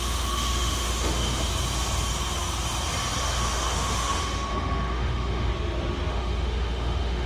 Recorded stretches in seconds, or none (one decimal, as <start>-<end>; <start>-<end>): 1.5-3.2; 5.5-6.1